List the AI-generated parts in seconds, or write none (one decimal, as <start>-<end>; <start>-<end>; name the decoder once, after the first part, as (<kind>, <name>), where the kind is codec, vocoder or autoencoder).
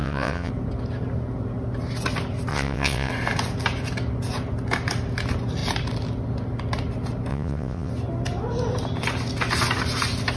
0.0-0.5 (vocoder, WaveNeXt); 2.5-3.1; 7.3-7.9